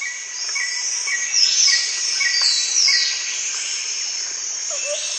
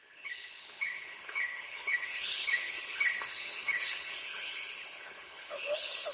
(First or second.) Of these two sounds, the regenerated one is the second